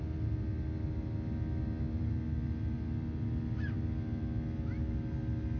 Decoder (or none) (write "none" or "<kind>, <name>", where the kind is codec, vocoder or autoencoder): none